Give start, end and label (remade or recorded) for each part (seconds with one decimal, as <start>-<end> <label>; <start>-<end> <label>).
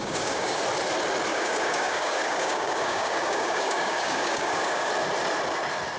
0.0-0.6 remade; 0.6-1.3 recorded; 1.3-4.9 remade; 4.9-6.0 recorded